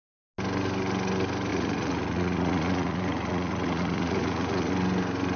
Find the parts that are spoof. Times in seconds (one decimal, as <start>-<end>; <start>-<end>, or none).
1.5-4.7